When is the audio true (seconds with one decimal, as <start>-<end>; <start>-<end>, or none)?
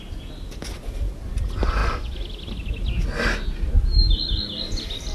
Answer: 0.0-5.1